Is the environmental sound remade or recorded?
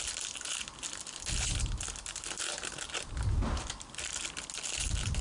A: recorded